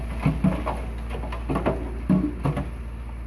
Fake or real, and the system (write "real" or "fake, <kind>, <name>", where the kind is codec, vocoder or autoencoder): real